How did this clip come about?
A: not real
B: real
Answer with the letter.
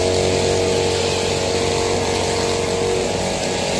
B